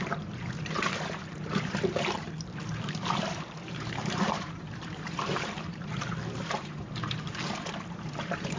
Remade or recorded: remade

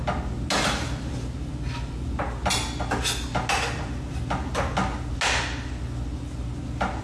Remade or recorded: recorded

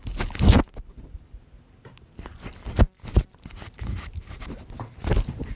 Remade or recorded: recorded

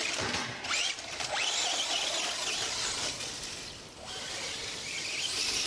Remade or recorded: recorded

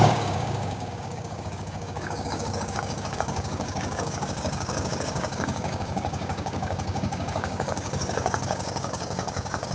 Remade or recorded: remade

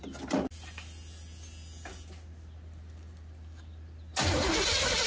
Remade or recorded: recorded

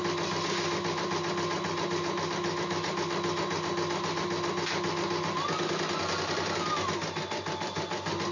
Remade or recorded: recorded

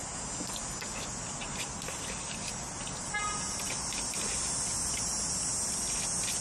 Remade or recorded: recorded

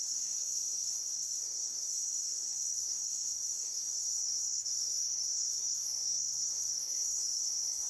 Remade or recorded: remade